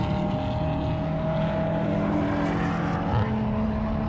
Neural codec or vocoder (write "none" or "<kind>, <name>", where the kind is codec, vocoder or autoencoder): none